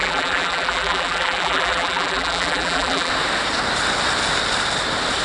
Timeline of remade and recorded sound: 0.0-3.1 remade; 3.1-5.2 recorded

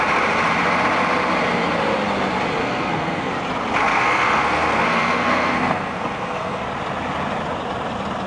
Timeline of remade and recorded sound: 0.0-2.6 recorded; 2.6-3.3 remade; 3.3-3.9 recorded; 3.9-6.6 remade; 6.6-8.3 recorded

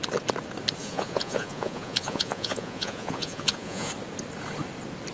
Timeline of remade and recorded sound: 0.0-0.8 recorded; 0.8-3.9 remade; 3.9-5.1 recorded

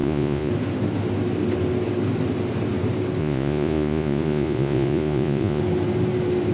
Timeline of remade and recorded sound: 0.0-0.5 remade; 0.5-3.2 recorded; 3.2-5.6 remade; 5.6-6.5 recorded

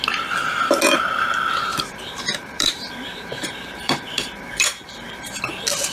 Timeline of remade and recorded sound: 0.0-1.7 recorded; 1.7-5.2 remade; 5.2-5.9 recorded